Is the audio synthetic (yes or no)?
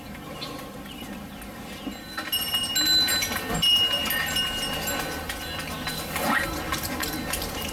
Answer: no